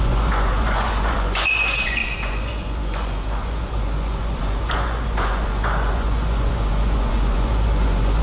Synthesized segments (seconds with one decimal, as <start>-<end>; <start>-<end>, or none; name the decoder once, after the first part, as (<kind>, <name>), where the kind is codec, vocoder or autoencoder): 0.0-8.2 (vocoder, Vocos)